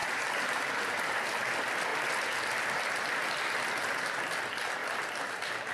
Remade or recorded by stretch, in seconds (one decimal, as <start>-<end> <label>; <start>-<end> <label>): 0.0-1.4 remade; 1.4-4.8 recorded; 4.8-5.7 remade